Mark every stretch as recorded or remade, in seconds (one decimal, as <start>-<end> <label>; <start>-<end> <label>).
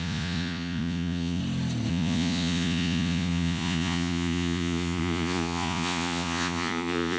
0.0-1.4 remade; 1.4-1.9 recorded; 1.9-7.2 remade